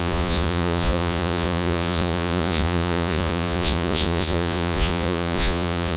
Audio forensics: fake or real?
fake